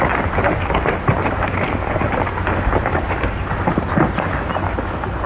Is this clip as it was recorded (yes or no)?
yes